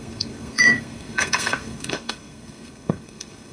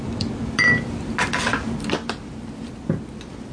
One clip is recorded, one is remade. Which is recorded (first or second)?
second